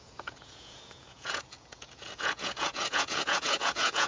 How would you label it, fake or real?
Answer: fake